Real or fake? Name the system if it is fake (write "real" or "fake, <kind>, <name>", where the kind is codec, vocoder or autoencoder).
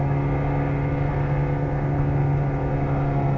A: real